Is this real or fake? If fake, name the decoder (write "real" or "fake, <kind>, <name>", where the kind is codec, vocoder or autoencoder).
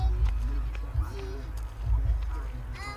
real